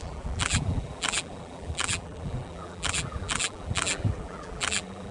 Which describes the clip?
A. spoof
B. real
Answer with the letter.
A